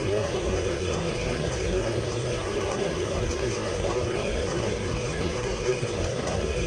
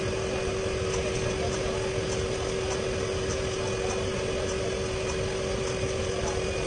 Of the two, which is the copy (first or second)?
first